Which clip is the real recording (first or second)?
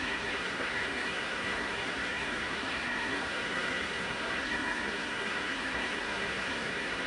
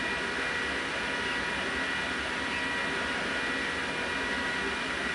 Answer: second